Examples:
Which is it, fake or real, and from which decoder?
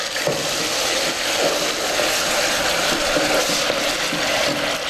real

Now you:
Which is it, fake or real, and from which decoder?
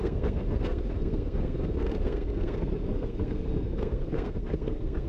fake, codec, SNAC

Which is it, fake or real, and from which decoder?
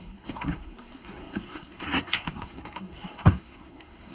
fake, codec, SNAC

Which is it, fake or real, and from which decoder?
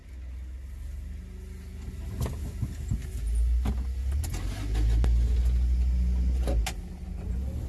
real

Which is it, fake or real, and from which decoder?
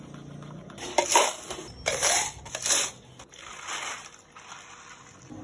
real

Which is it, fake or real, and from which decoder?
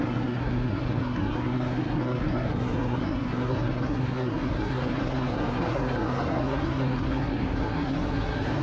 fake, codec, SNAC